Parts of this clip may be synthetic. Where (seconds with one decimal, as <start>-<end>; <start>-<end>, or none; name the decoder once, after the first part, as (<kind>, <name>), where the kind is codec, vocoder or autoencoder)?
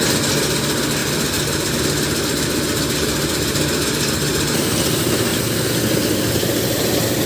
1.0-1.8 (vocoder, BigVGAN v2)